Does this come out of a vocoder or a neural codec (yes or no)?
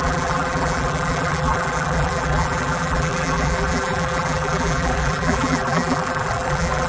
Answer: yes